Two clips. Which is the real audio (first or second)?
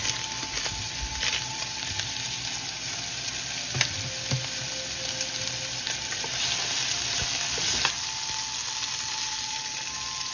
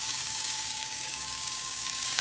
first